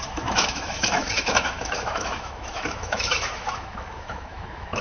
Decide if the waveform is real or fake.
fake